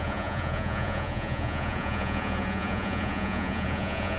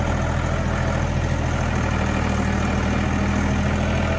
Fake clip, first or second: first